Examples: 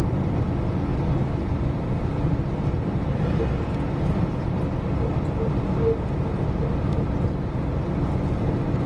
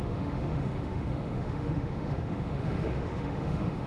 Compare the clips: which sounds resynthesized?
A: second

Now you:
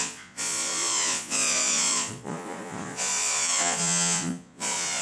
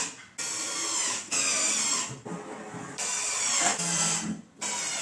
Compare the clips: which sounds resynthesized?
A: first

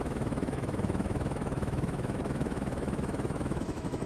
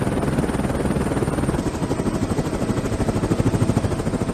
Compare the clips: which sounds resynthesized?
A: first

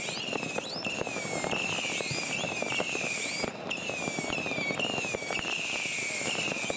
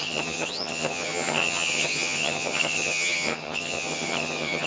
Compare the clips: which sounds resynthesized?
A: second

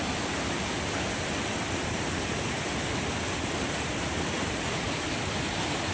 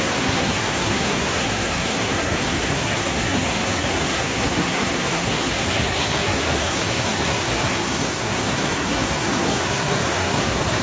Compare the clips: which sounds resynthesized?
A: second